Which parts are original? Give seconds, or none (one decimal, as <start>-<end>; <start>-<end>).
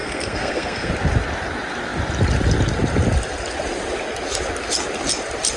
0.9-5.6